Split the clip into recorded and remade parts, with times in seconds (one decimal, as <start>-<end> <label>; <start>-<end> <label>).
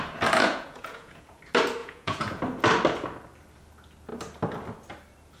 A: 0.0-0.4 recorded; 0.4-1.4 remade; 1.4-1.8 recorded; 1.8-2.4 remade; 2.4-5.4 recorded